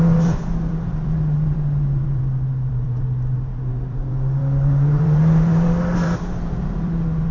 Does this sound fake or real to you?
fake